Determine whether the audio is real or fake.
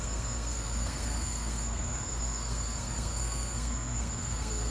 fake